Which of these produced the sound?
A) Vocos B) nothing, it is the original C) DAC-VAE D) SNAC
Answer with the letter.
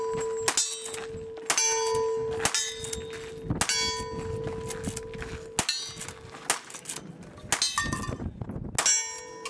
B